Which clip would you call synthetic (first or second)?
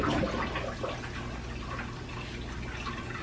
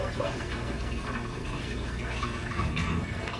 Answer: second